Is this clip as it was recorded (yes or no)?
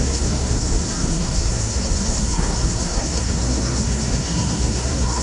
no